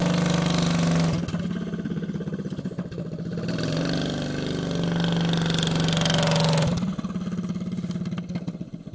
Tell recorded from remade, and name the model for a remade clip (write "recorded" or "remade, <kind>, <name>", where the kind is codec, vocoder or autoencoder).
recorded